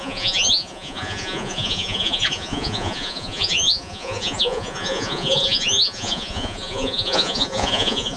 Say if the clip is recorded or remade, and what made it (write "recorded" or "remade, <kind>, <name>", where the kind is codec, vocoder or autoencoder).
remade, vocoder, Vocos